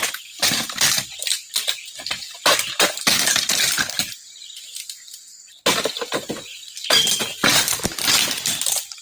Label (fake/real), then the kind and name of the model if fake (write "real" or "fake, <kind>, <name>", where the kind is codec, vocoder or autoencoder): real